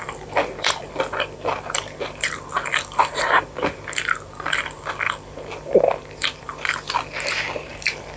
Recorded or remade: remade